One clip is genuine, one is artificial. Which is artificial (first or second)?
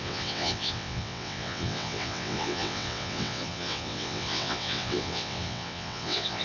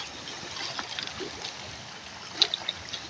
first